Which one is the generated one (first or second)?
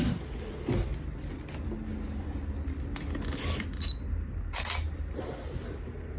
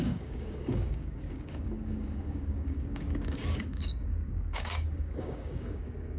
second